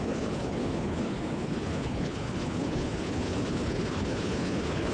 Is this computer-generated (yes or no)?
yes